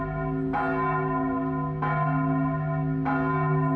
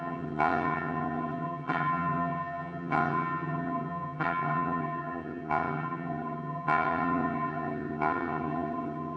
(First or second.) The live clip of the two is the first